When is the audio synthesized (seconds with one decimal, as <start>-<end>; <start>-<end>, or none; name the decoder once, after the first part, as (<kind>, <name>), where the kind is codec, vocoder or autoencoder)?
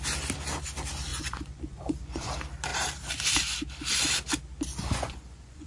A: 1.1-2.3 (vocoder, Vocos); 4.7-5.7